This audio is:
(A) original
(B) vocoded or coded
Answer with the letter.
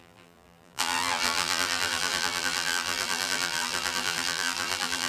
B